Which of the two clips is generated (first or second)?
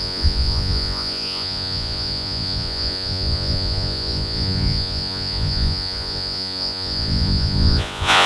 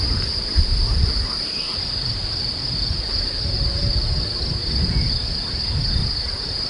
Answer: first